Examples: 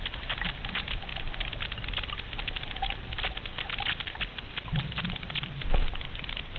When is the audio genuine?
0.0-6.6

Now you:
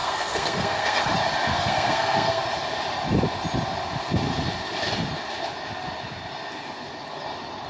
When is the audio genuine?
1.1-1.5; 2.4-7.7

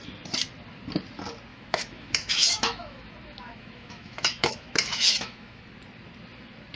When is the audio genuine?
0.0-1.5; 5.6-6.8

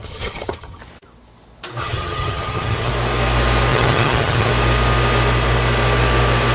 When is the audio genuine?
0.8-1.8; 2.9-3.7; 4.5-6.5